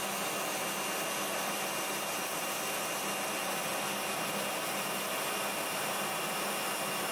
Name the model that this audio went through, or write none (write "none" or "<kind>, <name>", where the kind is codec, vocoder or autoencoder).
none